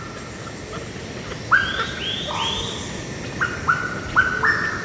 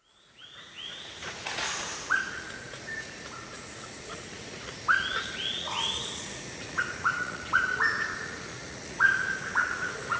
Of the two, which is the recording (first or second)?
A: first